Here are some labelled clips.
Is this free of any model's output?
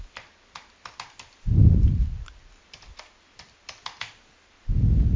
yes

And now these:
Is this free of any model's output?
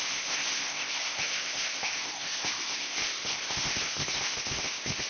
no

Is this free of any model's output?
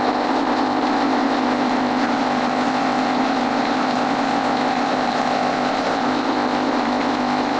no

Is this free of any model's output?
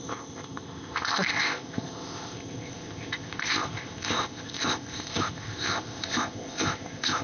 no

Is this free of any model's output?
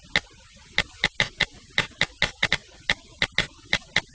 yes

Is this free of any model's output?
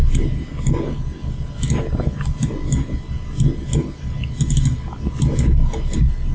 yes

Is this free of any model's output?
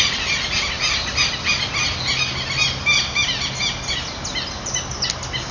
yes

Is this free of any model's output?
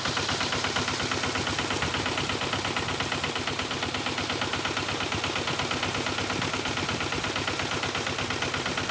yes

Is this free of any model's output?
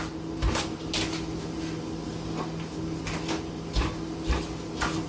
yes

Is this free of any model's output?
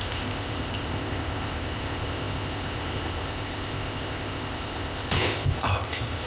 no